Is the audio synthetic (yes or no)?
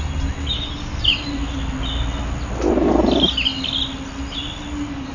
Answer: no